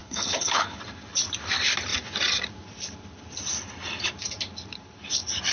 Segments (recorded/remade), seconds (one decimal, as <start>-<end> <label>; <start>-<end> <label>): 0.0-0.8 remade; 0.8-5.5 recorded

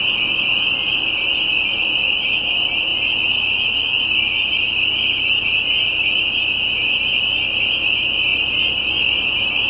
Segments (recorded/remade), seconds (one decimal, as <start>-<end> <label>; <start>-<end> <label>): 0.0-9.7 recorded

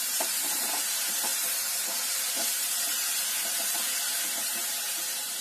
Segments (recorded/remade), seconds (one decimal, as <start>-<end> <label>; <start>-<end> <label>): 0.0-5.4 remade

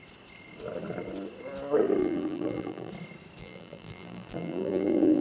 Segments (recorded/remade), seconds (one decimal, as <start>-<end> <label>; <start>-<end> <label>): 0.0-2.0 recorded; 2.0-2.9 remade; 2.9-3.4 recorded; 3.4-5.2 remade

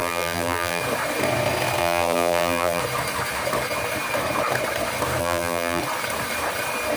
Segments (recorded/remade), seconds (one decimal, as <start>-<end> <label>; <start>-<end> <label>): 0.0-0.8 remade; 0.8-1.8 recorded; 1.8-2.8 remade; 2.8-5.2 recorded; 5.2-5.8 remade; 5.8-7.0 recorded

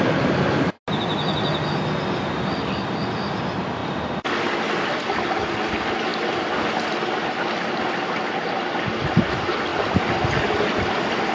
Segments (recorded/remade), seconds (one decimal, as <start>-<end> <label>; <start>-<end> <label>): 0.0-11.3 recorded

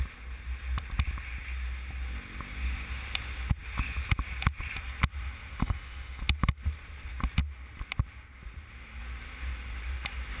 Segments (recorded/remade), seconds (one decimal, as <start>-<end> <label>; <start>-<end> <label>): 0.0-5.6 recorded; 5.6-6.2 remade; 6.2-10.4 recorded